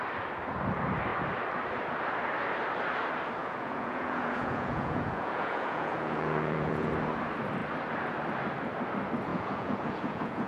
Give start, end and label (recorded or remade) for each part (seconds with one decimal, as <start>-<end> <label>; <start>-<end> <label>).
0.0-3.4 recorded; 3.4-6.9 remade; 6.9-9.3 recorded; 9.3-10.5 remade